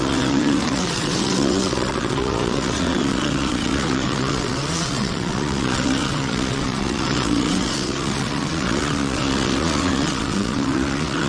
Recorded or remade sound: remade